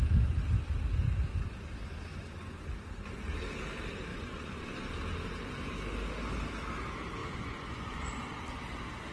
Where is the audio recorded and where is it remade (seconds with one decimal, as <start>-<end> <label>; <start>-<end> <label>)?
0.0-4.1 recorded; 4.1-4.8 remade; 4.8-7.2 recorded; 7.2-8.1 remade; 8.1-9.1 recorded